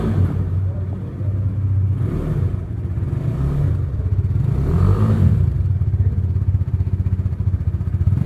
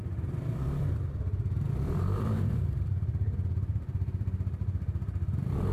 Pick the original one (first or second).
first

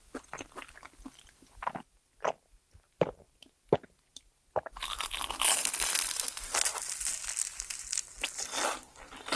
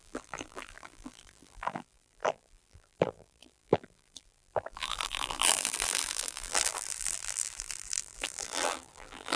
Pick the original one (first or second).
first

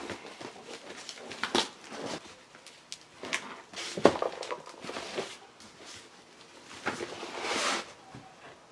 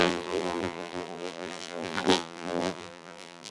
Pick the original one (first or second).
first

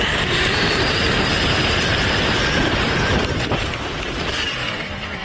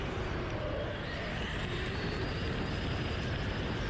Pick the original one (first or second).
second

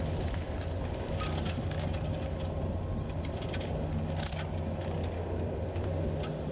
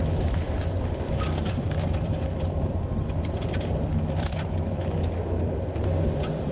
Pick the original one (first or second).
first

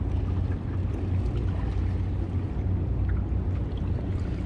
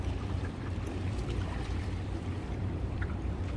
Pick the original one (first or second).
first